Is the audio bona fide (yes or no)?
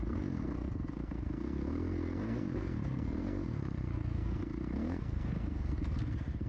no